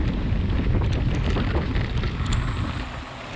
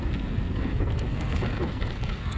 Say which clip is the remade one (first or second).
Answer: second